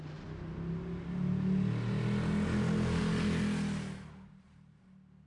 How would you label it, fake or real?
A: real